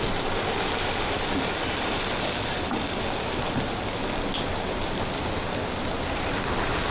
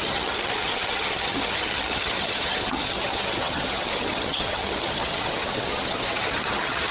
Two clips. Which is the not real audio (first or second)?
second